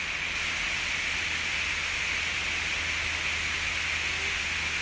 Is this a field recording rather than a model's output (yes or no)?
yes